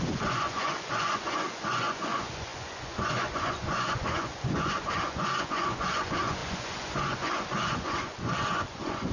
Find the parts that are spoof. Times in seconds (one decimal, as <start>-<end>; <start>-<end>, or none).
0.0-9.1